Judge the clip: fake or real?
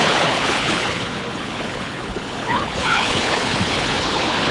fake